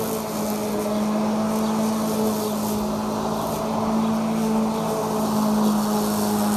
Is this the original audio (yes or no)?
yes